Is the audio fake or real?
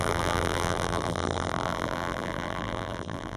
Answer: fake